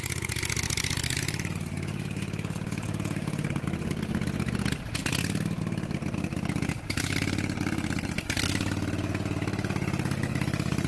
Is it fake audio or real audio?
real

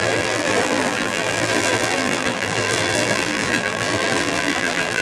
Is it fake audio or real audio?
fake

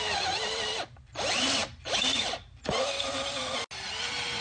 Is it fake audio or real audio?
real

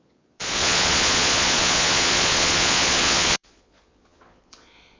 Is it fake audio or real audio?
fake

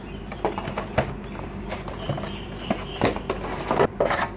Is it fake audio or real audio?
real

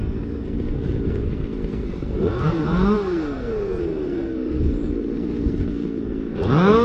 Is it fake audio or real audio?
fake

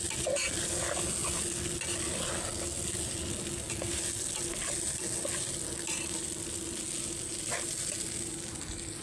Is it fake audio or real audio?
real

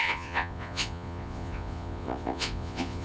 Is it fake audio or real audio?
fake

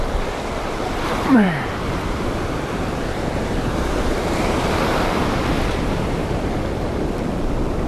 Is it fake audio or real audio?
fake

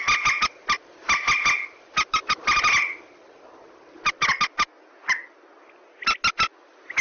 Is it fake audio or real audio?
real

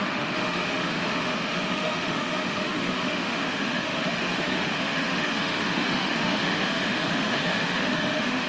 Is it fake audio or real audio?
fake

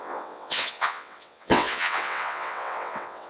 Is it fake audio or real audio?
fake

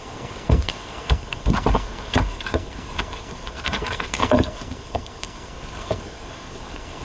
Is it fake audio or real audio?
fake